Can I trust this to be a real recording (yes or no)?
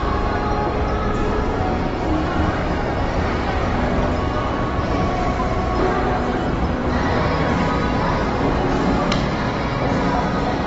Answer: yes